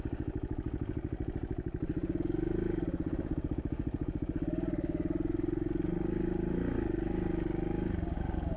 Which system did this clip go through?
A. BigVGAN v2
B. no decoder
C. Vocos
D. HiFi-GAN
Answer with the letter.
B